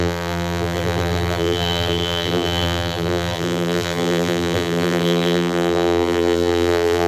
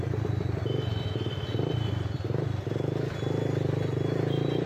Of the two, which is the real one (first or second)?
second